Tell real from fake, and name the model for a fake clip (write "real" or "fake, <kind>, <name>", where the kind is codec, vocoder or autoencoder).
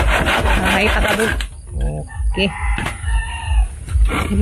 real